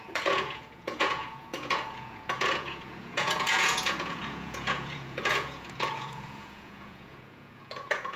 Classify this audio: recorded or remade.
remade